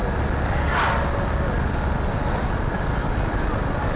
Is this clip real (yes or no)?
yes